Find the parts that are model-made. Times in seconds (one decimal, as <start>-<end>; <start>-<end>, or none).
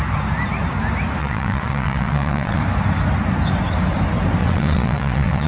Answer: 1.2-2.6; 4.4-5.5